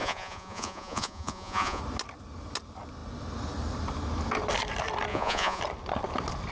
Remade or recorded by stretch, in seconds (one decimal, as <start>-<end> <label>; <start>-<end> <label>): 0.0-1.8 remade; 1.8-5.1 recorded; 5.1-5.6 remade; 5.6-6.5 recorded